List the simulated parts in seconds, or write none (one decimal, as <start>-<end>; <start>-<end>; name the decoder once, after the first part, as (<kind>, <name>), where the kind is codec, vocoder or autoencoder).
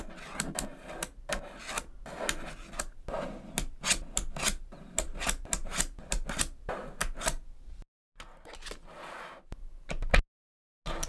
none